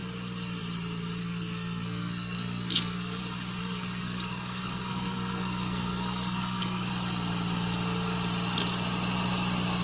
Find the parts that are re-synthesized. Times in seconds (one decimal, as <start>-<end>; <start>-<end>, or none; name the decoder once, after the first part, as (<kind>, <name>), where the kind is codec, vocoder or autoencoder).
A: 1.2-3.2 (codec, SNAC); 3.6-6.9